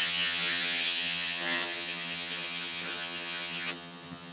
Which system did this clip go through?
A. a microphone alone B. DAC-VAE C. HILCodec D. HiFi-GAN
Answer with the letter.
D